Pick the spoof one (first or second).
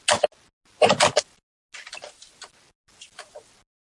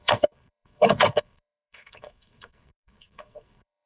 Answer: second